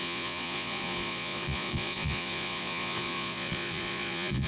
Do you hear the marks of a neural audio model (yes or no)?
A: yes